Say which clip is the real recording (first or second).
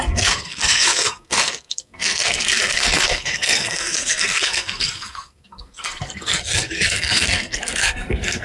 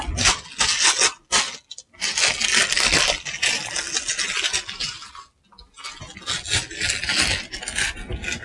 second